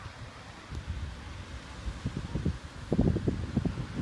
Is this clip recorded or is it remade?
recorded